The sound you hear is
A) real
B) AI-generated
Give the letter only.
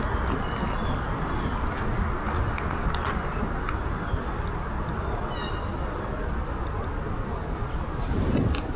A